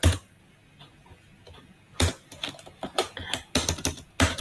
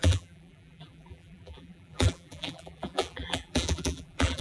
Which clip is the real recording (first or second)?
first